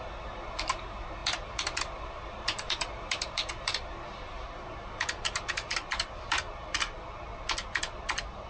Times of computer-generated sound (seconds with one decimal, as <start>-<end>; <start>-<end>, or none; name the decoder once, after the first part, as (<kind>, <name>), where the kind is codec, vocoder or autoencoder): 0.0-7.3 (vocoder, BigVGAN v2); 8.0-8.5